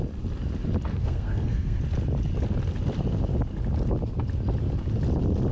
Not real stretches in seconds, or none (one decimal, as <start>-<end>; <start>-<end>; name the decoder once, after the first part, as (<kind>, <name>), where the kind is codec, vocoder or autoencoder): 0.9-1.8 (codec, SNAC)